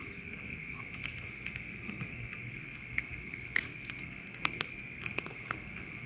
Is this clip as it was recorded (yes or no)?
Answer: no